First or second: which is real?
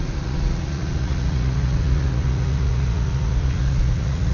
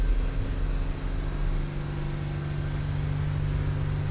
second